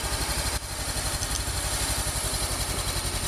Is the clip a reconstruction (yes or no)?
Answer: no